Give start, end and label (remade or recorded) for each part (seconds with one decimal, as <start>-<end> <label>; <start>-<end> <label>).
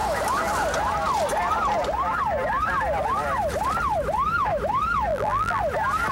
0.0-5.1 recorded; 5.1-5.6 remade; 5.6-6.1 recorded